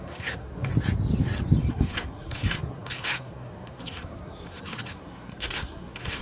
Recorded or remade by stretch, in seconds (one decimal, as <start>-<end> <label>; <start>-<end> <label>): 0.0-0.7 remade; 0.7-1.7 recorded; 1.7-6.2 remade